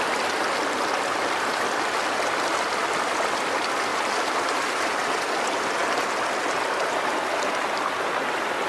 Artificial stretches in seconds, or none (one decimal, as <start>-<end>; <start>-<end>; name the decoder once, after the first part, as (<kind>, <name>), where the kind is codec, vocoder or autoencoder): 3.9-5.1 (vocoder, BigVGAN v2)